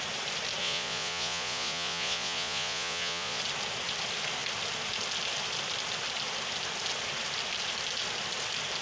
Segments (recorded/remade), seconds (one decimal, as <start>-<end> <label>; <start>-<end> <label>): 0.0-0.6 recorded; 0.6-3.4 remade; 3.4-8.8 recorded